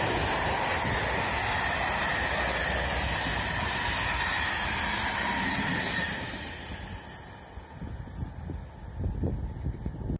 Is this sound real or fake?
real